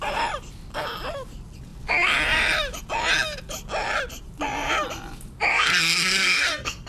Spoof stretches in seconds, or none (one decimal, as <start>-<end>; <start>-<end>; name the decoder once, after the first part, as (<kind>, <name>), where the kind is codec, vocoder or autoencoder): 5.5-6.9 (codec, SNAC)